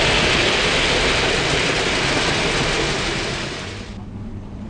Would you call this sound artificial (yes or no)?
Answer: no